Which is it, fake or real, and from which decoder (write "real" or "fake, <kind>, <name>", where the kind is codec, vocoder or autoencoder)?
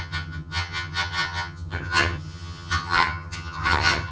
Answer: fake, vocoder, HiFi-GAN